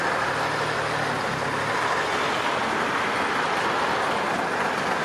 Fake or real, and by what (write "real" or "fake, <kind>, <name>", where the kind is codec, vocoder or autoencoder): real